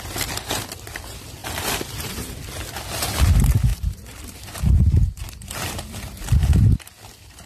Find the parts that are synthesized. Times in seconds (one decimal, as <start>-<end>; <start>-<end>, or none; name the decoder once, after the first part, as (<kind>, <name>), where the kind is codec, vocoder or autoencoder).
3.7-4.6 (vocoder, BigVGAN v2)